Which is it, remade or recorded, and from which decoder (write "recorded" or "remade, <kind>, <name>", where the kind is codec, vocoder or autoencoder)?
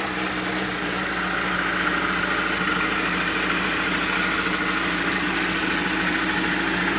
recorded